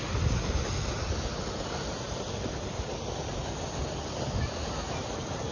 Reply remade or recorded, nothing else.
recorded